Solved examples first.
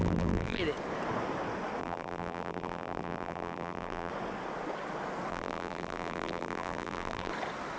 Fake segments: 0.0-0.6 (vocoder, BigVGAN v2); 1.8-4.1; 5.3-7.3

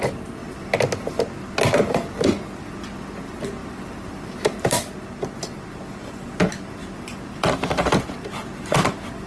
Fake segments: 3.6-4.6 (vocoder, BigVGAN v2); 6.8-8.0

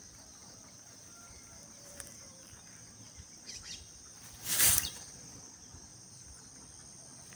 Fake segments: 0.4-3.6 (vocoder, BigVGAN v2); 4.5-5.1; 5.9-6.4

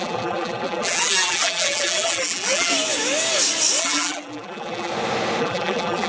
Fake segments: 0.0-2.7 (vocoder, BigVGAN v2); 3.8-4.9; 5.4-6.1

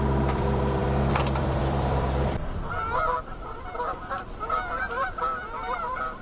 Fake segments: 0.0-6.2 (vocoder, BigVGAN v2)

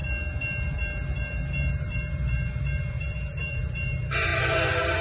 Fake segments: 3.0-5.0 (vocoder, BigVGAN v2)